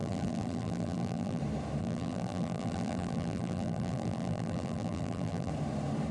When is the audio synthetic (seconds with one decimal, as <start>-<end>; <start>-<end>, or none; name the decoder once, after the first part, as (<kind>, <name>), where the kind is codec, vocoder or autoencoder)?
0.0-1.4 (vocoder, BigVGAN v2); 1.8-5.5